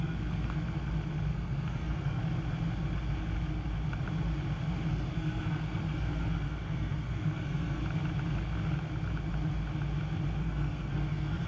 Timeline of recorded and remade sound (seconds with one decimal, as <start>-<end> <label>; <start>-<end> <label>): 0.0-0.6 remade; 0.6-1.3 recorded; 1.3-2.2 remade; 2.2-4.9 recorded; 4.9-7.8 remade; 7.8-10.4 recorded; 10.4-11.5 remade